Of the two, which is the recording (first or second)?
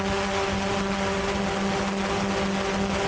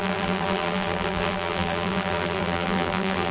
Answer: first